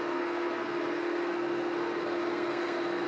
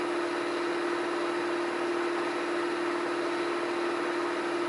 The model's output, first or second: first